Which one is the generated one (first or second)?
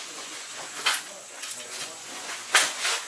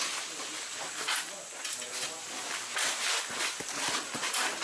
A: first